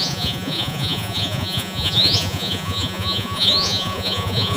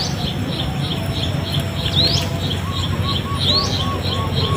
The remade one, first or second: first